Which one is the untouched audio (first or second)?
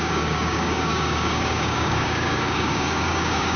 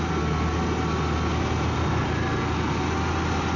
second